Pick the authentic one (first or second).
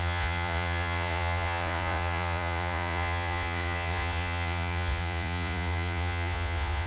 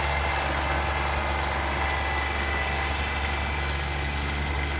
second